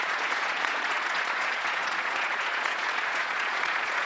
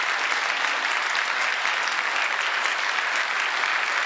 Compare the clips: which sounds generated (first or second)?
first